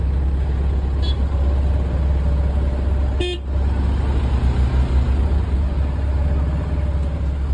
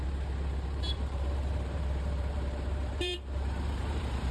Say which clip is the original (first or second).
first